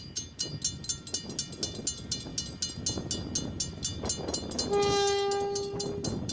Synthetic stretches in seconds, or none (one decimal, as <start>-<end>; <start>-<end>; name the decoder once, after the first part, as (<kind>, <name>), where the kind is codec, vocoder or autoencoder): none